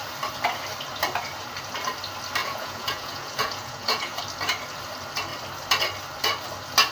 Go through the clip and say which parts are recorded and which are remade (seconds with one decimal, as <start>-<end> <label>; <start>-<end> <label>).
0.0-2.4 recorded; 2.4-4.2 remade; 4.2-6.9 recorded